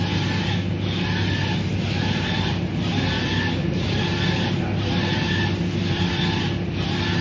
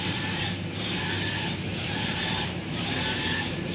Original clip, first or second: first